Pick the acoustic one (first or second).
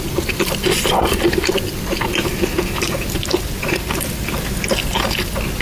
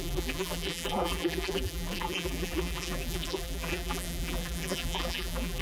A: first